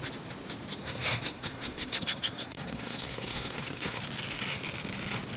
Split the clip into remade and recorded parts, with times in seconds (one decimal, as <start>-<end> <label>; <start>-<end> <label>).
0.0-0.8 recorded; 0.8-4.0 remade; 4.0-5.4 recorded